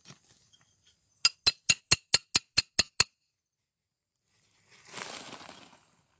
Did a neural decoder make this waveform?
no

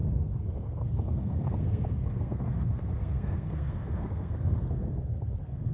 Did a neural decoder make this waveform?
yes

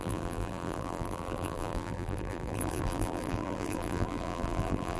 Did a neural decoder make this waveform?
yes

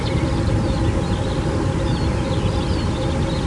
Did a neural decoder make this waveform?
no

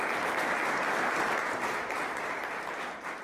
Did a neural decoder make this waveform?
no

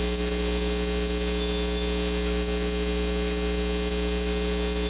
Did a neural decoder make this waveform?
no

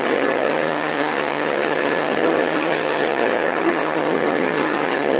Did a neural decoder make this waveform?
yes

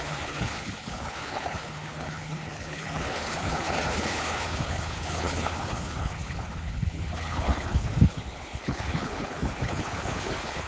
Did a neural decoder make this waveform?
yes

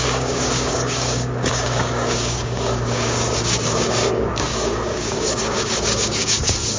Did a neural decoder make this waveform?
yes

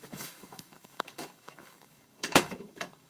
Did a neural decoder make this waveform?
yes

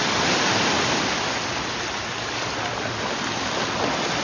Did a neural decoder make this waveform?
no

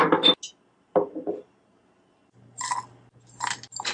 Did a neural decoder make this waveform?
no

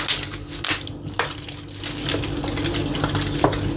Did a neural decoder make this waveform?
no